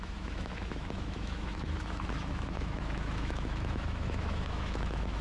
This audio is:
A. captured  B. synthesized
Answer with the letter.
B